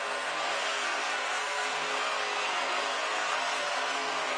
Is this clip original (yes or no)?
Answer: no